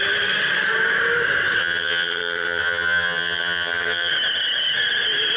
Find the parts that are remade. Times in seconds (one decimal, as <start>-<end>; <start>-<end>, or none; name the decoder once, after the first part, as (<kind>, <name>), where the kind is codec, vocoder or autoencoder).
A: 1.6-4.1 (vocoder, HiFi-GAN)